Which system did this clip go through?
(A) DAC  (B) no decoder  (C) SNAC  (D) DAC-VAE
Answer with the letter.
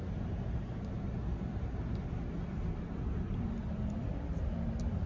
B